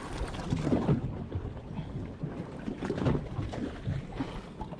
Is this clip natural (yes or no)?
yes